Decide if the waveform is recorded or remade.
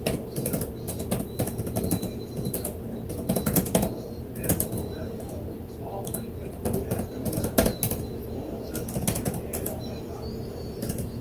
recorded